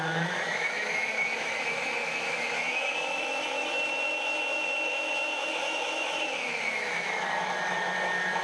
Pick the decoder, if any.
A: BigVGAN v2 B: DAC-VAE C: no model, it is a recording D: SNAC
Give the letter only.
B